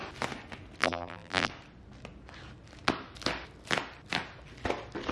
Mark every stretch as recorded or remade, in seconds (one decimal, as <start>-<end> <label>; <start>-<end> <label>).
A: 0.0-0.8 recorded; 0.8-1.5 remade; 1.5-5.1 recorded